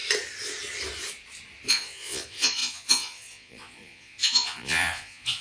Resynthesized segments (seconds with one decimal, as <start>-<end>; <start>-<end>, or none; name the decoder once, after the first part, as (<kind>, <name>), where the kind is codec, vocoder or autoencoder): 1.7-5.4 (vocoder, Vocos)